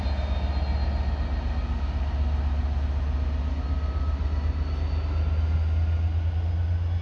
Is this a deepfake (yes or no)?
no